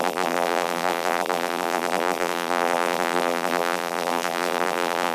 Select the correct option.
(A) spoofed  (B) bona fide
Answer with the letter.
A